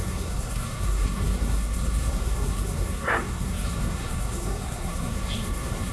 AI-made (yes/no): yes